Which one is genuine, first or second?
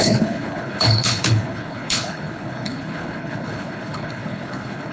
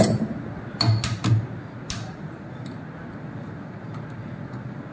second